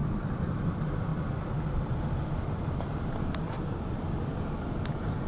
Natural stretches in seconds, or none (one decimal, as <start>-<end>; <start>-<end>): 0.6-1.1; 4.3-5.3